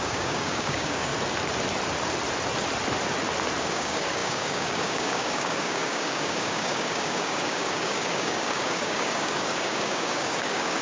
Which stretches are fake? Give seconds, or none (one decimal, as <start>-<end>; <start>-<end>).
0.0-1.1; 3.6-10.8